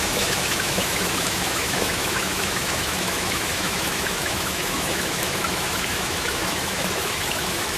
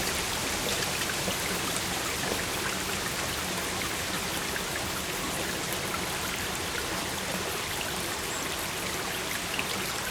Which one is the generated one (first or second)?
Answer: first